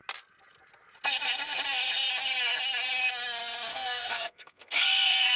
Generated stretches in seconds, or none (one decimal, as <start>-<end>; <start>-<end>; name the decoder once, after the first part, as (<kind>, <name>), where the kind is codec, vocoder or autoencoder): 3.7-5.4 (codec, SNAC)